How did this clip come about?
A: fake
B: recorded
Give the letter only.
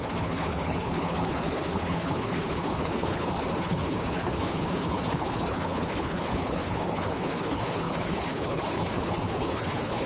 A